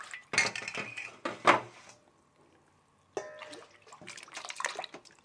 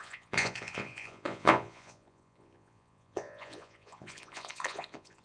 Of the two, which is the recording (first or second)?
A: first